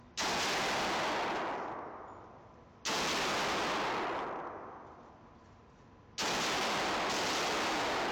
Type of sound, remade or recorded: recorded